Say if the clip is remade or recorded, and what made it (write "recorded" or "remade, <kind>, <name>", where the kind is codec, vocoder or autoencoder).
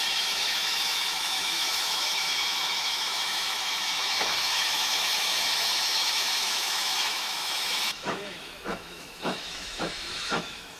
remade, autoencoder, DAC-VAE